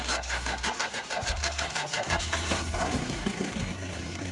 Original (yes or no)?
no